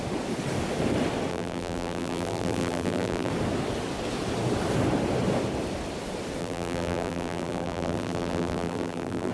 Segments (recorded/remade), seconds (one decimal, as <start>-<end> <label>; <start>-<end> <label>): 0.0-1.3 recorded; 1.3-3.3 remade; 3.3-6.4 recorded; 6.4-9.3 remade